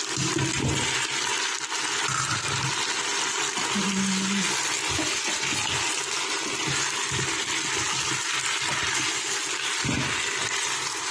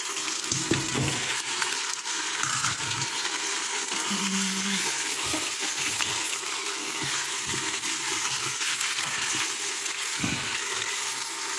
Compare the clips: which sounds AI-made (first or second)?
second